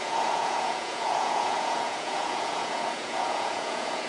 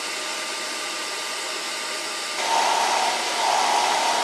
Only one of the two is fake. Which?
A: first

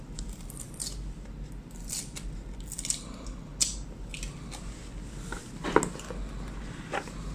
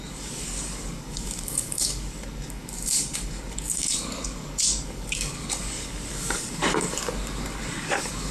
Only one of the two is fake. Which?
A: second